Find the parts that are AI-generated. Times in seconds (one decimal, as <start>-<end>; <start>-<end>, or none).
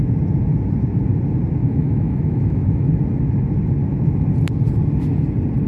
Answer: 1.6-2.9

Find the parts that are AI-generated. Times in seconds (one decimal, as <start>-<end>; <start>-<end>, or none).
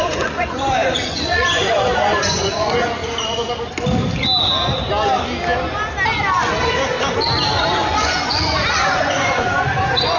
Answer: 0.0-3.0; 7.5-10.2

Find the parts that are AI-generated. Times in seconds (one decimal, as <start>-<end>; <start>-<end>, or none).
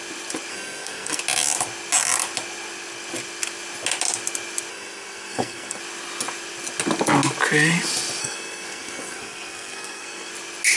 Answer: 0.5-1.2; 4.7-5.8; 8.2-10.3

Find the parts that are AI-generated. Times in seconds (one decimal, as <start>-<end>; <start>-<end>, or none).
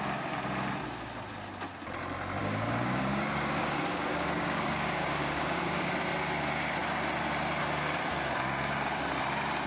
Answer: 2.4-5.9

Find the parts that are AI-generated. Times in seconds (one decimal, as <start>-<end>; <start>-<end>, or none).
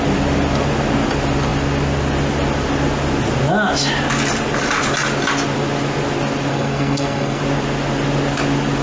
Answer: 6.5-7.4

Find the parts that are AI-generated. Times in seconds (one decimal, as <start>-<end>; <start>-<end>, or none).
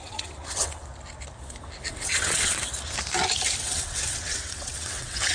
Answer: 0.0-0.8; 1.9-2.7; 3.6-5.3